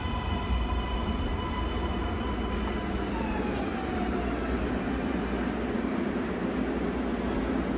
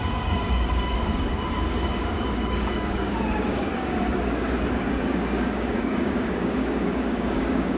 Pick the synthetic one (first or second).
second